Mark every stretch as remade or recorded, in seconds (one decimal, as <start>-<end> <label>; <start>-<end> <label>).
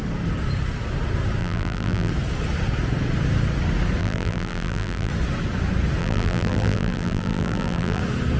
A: 0.0-1.4 recorded; 1.4-2.1 remade; 2.1-4.0 recorded; 4.0-5.1 remade; 5.1-6.0 recorded; 6.0-8.0 remade; 8.0-8.4 recorded